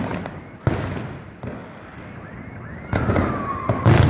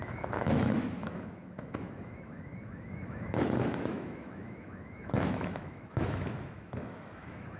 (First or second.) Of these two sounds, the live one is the first